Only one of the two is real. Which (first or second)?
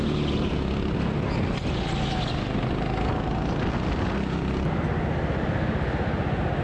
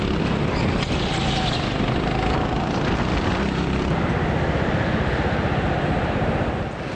first